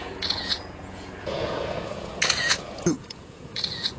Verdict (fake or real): fake